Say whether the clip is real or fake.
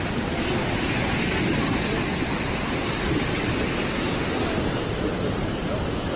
real